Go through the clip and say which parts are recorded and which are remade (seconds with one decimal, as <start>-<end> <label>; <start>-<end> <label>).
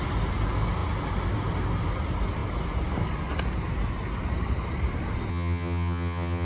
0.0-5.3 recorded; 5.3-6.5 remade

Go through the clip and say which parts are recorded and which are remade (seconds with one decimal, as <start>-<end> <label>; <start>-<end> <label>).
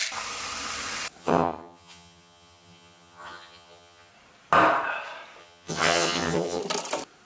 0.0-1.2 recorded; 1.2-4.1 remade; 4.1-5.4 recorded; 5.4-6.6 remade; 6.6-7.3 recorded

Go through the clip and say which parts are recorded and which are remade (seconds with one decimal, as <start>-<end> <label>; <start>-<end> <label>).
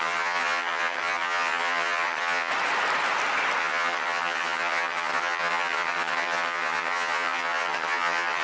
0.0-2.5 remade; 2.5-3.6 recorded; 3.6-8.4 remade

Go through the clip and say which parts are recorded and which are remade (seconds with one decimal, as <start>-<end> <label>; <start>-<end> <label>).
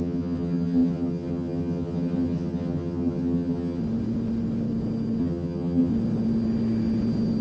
0.0-3.8 remade; 3.8-5.2 recorded; 5.2-5.9 remade; 5.9-7.4 recorded